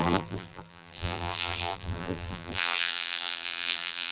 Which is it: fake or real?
fake